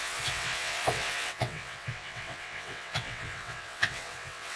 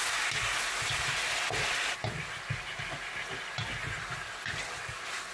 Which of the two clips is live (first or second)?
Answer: second